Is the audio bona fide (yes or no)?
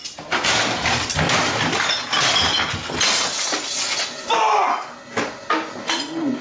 yes